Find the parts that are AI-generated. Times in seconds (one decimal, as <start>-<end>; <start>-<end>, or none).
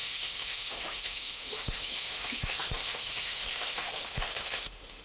0.0-5.0